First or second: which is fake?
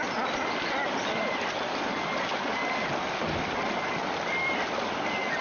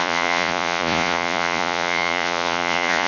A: second